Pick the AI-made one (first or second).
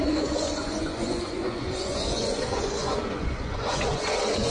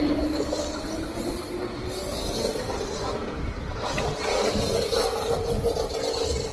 first